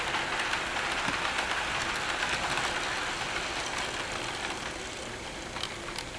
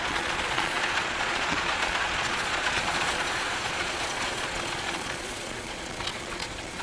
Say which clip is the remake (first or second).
second